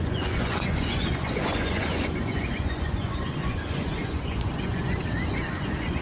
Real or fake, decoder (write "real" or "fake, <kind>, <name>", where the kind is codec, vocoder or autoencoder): fake, vocoder, Vocos